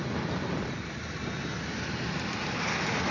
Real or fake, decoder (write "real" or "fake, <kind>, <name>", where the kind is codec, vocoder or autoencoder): real